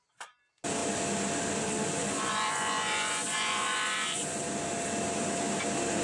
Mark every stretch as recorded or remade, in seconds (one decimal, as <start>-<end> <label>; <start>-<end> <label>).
0.0-2.0 recorded; 2.0-4.4 remade; 4.4-6.0 recorded